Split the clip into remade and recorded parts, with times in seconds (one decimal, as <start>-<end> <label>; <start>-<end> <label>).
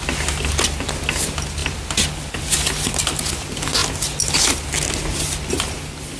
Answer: 0.0-6.2 recorded